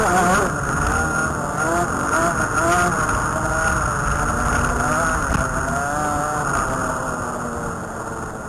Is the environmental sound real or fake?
real